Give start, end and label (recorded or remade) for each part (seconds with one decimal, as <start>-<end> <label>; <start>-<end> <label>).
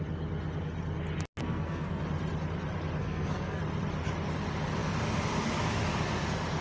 0.0-1.4 recorded; 1.4-2.0 remade; 2.0-3.0 recorded; 3.0-3.6 remade; 3.6-6.6 recorded